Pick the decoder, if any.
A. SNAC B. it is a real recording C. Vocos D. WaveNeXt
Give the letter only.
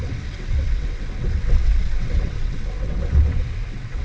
D